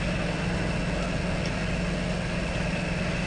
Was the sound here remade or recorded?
recorded